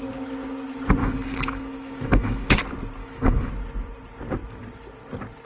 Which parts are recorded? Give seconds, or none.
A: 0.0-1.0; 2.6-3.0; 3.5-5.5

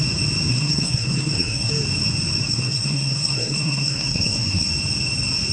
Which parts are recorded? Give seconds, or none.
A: 0.0-0.5; 1.7-2.5; 4.7-5.5

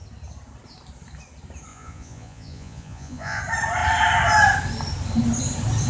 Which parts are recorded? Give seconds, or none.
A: 0.0-1.7; 3.4-5.9

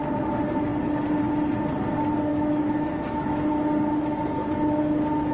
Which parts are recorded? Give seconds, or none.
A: 0.0-2.3; 3.5-5.3

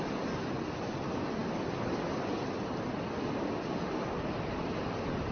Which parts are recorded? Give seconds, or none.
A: 0.0-5.3

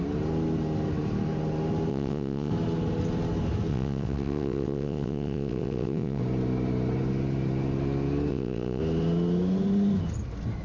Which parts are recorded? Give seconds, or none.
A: 0.0-1.9; 2.5-3.7; 6.2-8.3; 8.8-10.6

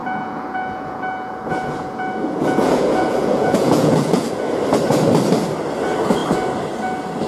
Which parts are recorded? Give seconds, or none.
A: 4.3-7.3